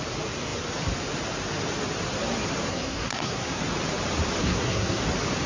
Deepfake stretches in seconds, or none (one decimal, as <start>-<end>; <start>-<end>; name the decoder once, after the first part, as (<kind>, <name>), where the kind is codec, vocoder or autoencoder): 2.7-3.6 (codec, SNAC); 4.4-5.0